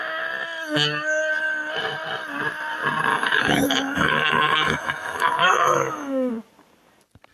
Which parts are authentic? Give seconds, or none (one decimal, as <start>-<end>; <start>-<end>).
0.0-3.1; 6.3-7.3